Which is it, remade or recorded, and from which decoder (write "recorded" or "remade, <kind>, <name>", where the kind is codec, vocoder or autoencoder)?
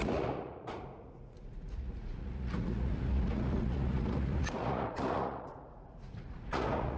remade, vocoder, Vocos